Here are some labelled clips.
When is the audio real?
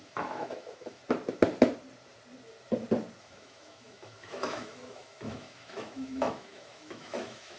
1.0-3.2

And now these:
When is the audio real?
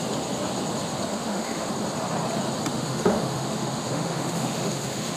0.0-1.1; 1.7-2.7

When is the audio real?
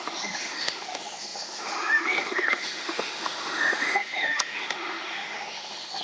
none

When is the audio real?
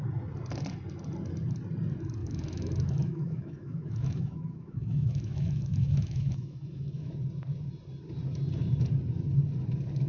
0.0-2.2; 7.1-10.1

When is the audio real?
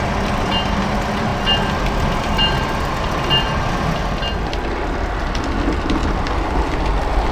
0.0-7.3